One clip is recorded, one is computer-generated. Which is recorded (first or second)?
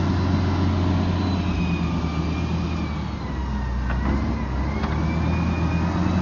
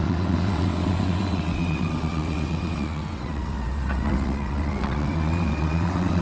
first